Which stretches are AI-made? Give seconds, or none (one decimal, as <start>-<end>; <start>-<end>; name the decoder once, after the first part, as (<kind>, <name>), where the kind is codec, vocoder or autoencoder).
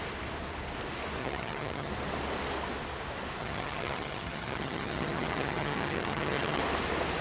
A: 1.2-1.9 (vocoder, HiFi-GAN); 3.4-6.6